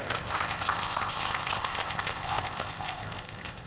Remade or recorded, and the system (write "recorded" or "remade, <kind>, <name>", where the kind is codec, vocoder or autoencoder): remade, codec, ZipCodec